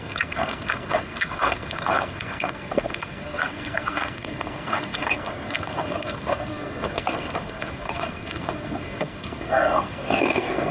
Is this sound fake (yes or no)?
yes